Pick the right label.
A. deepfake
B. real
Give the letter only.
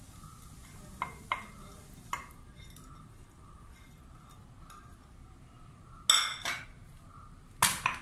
B